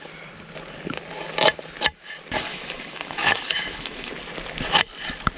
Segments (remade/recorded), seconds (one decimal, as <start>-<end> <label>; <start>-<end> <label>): 0.0-2.5 recorded; 2.5-4.1 remade; 4.1-5.4 recorded